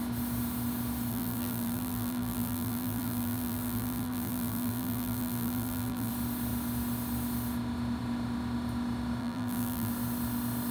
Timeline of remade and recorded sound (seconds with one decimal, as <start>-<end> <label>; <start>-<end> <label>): 0.0-1.1 recorded; 1.1-6.1 remade; 6.1-9.2 recorded; 9.2-9.9 remade; 9.9-10.7 recorded